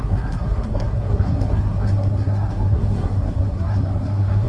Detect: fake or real fake